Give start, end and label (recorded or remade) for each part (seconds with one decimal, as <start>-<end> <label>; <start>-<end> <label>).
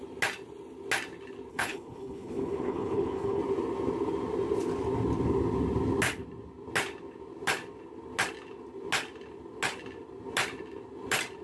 0.0-1.5 recorded; 1.5-3.4 remade; 3.4-11.4 recorded